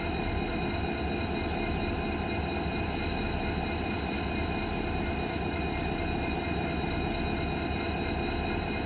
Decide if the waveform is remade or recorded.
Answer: recorded